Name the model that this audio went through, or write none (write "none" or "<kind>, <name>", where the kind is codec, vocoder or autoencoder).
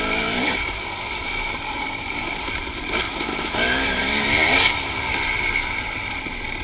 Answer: vocoder, BigVGAN v2